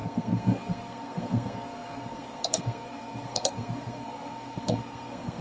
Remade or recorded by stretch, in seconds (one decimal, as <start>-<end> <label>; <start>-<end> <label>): 0.0-5.4 remade